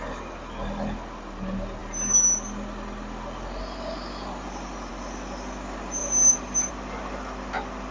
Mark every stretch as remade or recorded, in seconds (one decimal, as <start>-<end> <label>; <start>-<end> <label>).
0.0-6.0 recorded; 6.0-6.7 remade; 6.7-7.9 recorded